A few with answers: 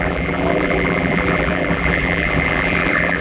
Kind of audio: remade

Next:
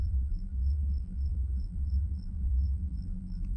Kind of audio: remade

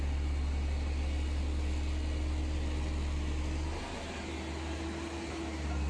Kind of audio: recorded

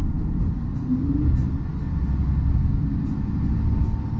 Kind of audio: recorded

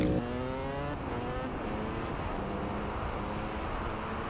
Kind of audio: recorded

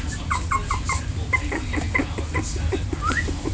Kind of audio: recorded